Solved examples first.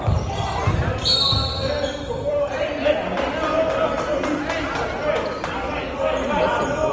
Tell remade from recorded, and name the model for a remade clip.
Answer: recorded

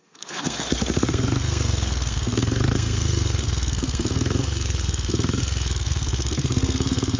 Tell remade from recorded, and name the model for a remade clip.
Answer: remade, codec, SNAC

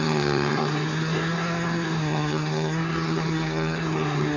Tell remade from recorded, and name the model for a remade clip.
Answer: remade, codec, SNAC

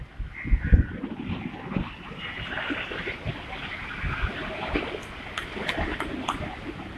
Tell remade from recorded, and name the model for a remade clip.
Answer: recorded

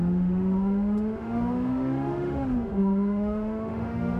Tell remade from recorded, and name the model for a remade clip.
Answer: remade, autoencoder, DAC-VAE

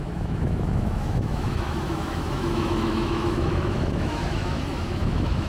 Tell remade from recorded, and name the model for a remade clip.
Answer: remade, autoencoder, DAC-VAE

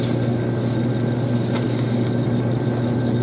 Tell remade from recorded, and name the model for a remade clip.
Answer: recorded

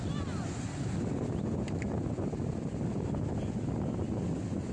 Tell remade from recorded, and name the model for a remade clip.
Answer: recorded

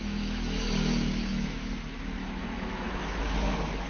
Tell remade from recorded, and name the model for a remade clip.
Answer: remade, autoencoder, DAC-VAE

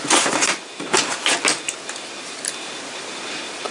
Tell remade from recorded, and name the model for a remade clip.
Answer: recorded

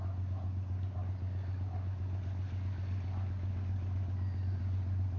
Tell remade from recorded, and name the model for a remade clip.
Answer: recorded